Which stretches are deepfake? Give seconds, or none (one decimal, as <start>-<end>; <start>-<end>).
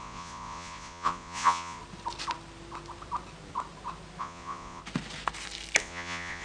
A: 0.0-1.8; 4.2-4.8; 5.8-6.4